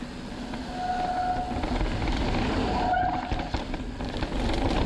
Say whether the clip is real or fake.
real